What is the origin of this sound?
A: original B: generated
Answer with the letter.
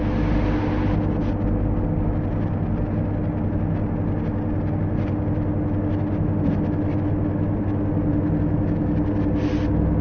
A